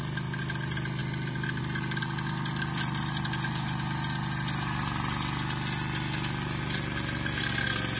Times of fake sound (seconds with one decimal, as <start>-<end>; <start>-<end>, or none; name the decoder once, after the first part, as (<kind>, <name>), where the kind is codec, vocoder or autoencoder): 1.0-1.6 (vocoder, BigVGAN v2)